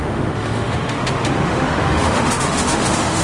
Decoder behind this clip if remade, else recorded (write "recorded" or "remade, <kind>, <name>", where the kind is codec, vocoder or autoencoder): remade, autoencoder, DAC-VAE